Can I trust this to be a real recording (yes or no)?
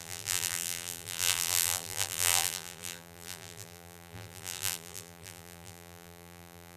no